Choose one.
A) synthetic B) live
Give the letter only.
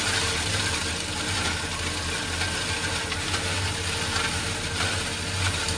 B